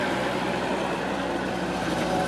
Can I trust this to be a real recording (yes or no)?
no